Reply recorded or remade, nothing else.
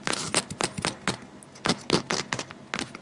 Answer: recorded